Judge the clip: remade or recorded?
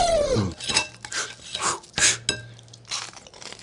recorded